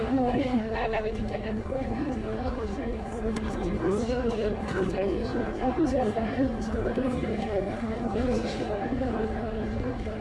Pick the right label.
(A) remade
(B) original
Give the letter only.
A